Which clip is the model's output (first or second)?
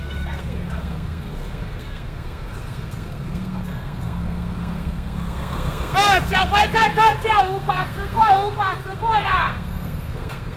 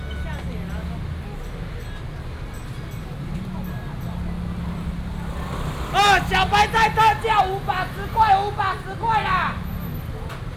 first